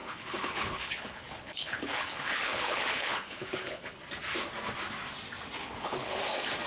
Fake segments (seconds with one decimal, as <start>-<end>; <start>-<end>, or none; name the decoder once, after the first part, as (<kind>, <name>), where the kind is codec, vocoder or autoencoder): 0.0-4.0 (codec, HILCodec); 5.6-6.2